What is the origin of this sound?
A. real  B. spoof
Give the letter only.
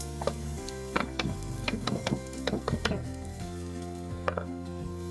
B